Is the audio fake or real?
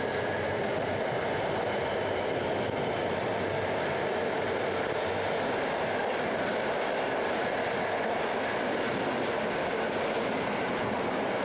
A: real